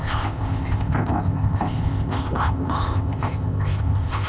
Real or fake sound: fake